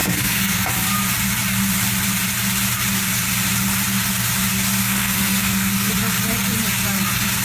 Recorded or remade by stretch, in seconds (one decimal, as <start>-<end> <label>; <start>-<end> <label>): 0.0-0.7 remade; 0.7-4.8 recorded; 4.8-5.9 remade; 5.9-7.4 recorded